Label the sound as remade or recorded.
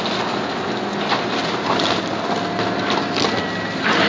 recorded